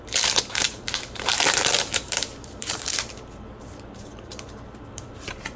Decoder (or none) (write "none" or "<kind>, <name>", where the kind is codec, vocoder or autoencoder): vocoder, BigVGAN v2